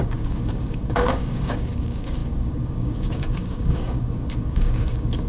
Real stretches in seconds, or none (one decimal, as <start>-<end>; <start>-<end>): none